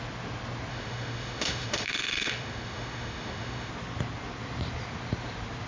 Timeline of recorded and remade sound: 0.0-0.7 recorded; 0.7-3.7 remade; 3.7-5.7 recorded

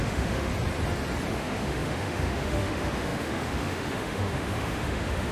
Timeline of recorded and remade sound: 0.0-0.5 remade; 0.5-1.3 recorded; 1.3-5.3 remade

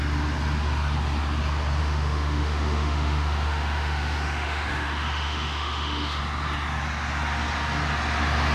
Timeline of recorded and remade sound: 0.0-1.8 recorded; 1.8-6.2 remade; 6.2-8.5 recorded

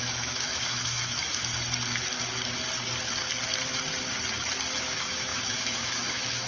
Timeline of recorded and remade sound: 0.0-1.5 remade; 1.5-4.8 recorded; 4.8-6.5 remade

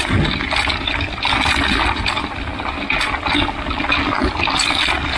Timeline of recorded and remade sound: 0.0-5.2 recorded